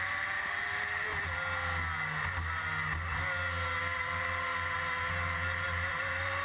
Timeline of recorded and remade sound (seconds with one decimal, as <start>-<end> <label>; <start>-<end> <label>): 0.0-1.1 remade; 1.1-4.0 recorded; 4.0-4.5 remade; 4.5-5.1 recorded; 5.1-6.4 remade